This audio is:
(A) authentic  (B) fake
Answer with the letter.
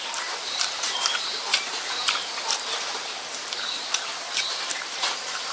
B